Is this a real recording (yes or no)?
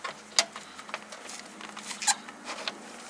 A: yes